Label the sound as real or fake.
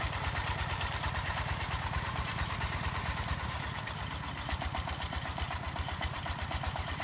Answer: fake